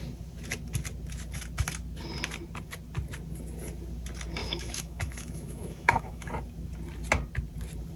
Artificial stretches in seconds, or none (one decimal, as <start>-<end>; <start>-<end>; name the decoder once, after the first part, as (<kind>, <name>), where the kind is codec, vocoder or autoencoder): 4.4-6.3 (autoencoder, DAC-VAE)